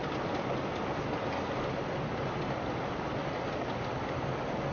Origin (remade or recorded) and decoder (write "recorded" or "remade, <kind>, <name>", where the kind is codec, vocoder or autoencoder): recorded